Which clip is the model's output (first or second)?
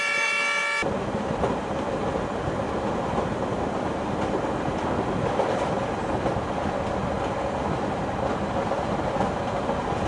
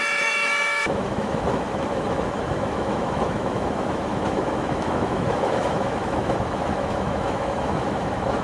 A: second